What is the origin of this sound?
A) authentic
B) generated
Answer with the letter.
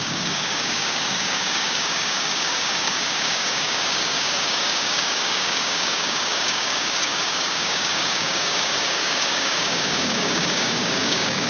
B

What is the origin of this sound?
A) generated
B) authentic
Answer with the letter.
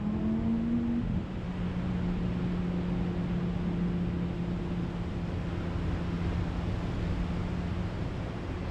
B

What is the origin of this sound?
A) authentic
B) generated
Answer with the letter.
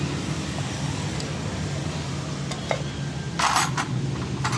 A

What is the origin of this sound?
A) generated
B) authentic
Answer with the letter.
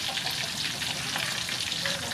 B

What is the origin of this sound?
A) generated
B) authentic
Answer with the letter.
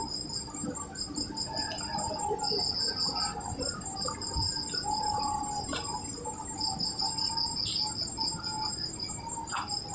B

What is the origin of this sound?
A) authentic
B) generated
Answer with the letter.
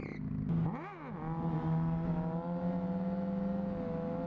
A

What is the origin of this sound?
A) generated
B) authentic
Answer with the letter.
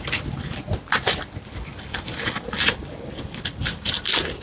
A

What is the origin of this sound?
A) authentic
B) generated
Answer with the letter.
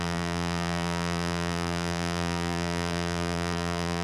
B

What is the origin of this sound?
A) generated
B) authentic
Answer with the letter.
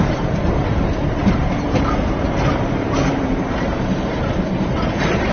A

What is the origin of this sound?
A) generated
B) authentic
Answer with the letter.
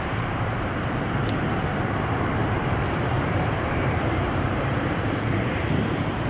A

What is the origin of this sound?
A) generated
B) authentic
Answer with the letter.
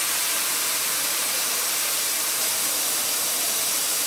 A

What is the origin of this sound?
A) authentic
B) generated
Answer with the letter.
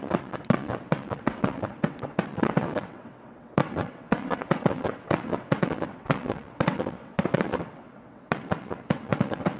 B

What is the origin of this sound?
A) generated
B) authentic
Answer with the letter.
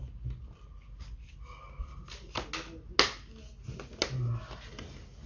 B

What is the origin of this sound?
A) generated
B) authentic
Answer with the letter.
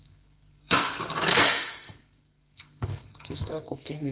A